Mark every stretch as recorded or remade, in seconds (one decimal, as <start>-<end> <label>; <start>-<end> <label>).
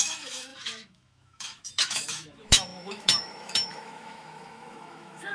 0.0-5.3 remade